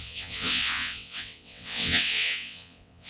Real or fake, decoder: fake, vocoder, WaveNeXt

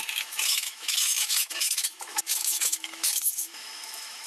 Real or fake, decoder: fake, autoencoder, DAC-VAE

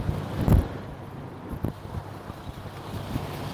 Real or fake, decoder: real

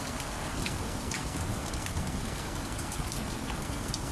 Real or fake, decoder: fake, codec, SNAC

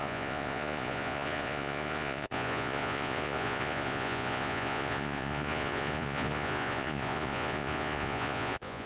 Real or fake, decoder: fake, vocoder, Vocos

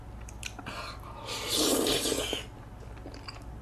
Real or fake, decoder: real